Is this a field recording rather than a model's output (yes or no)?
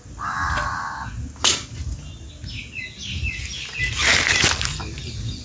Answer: yes